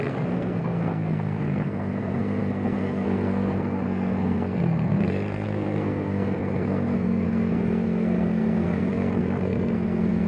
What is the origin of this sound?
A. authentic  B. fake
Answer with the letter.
B